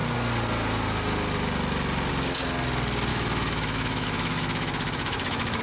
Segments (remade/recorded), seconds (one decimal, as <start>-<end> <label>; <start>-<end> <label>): 0.0-3.1 recorded; 3.1-5.6 remade